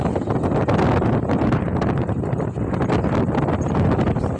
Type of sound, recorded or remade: recorded